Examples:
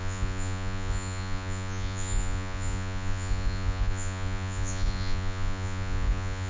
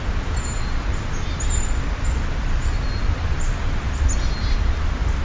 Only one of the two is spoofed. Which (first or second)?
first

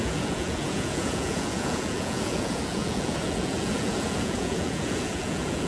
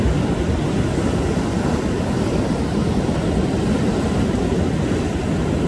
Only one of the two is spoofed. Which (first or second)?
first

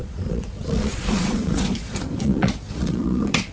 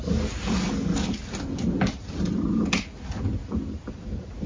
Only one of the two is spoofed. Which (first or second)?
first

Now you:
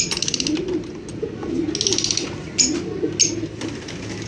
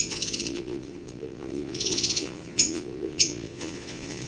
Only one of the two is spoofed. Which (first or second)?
second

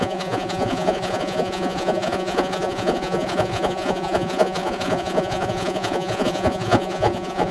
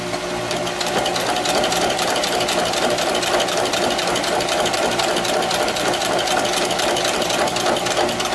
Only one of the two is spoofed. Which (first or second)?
first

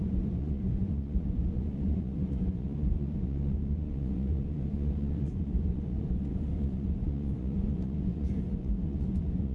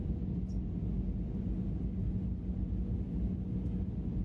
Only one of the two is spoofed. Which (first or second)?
first